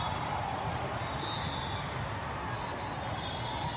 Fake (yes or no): no